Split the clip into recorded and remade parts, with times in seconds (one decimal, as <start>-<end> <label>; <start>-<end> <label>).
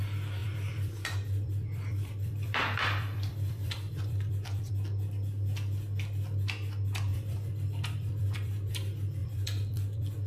0.0-0.4 recorded; 0.4-4.7 remade; 4.7-7.1 recorded; 7.1-8.7 remade; 8.7-9.2 recorded; 9.2-10.3 remade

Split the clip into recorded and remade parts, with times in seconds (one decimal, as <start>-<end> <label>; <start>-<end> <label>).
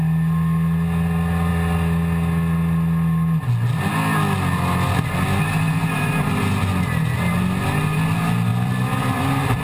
0.0-5.8 recorded; 5.8-6.3 remade; 6.3-8.5 recorded; 8.5-9.6 remade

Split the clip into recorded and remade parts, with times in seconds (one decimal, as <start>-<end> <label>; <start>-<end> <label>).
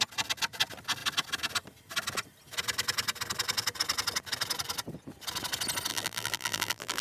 0.0-5.9 recorded; 5.9-7.0 remade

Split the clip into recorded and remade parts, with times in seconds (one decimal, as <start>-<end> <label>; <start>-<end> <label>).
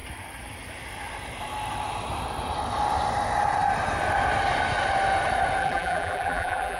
0.0-5.6 recorded; 5.6-6.8 remade